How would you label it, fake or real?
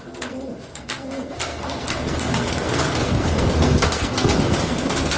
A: fake